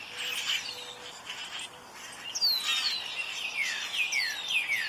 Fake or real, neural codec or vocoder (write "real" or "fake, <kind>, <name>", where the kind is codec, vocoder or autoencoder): real